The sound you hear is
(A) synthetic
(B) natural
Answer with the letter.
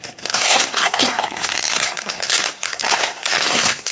A